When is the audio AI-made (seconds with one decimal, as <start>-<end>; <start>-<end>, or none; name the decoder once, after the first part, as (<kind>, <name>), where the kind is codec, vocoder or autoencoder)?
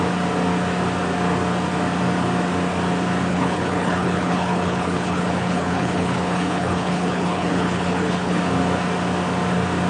3.3-8.4 (codec, HILCodec)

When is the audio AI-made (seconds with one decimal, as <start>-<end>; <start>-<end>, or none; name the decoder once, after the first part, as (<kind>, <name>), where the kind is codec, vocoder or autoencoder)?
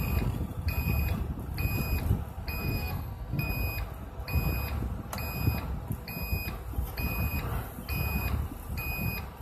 2.6-3.5 (codec, SNAC)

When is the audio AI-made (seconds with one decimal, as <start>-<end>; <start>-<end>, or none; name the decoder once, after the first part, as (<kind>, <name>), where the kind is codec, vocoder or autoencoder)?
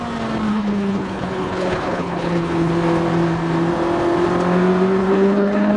0.5-2.7 (codec, HILCodec); 5.0-5.8